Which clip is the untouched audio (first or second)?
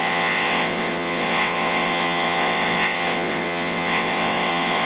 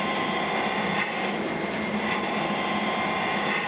second